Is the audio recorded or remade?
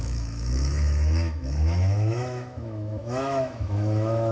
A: remade